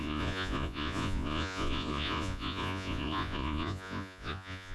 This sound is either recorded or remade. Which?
remade